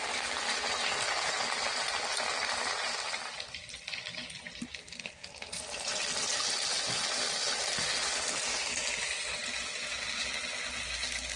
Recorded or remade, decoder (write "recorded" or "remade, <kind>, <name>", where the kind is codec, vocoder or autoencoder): recorded